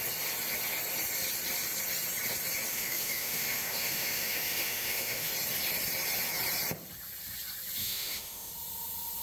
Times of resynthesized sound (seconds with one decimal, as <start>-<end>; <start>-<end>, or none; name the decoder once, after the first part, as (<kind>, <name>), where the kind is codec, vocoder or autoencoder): 2.7-5.3 (autoencoder, DAC-VAE); 7.8-8.5